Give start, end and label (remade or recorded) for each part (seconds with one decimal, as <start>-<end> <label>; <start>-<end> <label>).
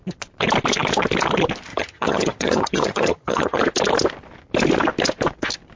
0.0-1.7 recorded; 1.7-3.6 remade; 3.6-5.8 recorded